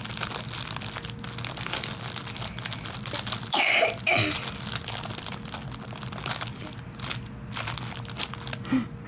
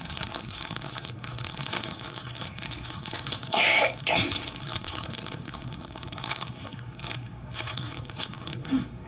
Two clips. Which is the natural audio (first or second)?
first